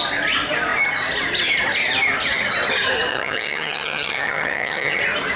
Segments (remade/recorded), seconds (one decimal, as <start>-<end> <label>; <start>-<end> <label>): 0.0-3.1 recorded; 3.1-5.0 remade; 5.0-5.4 recorded